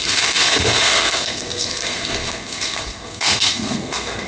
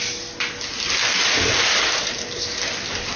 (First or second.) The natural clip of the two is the second